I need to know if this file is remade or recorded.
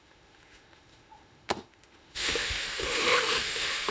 remade